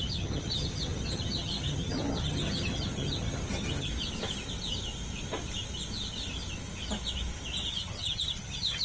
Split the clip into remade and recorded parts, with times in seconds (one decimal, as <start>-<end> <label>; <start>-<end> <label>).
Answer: 0.0-3.9 remade; 3.9-7.7 recorded; 7.7-8.8 remade